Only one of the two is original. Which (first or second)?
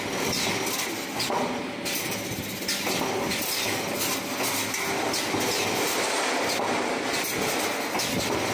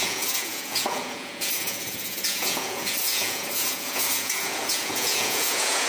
first